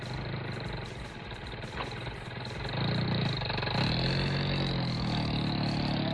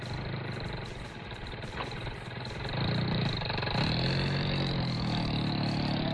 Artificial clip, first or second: second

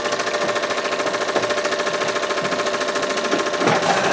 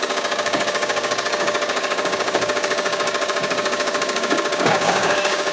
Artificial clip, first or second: second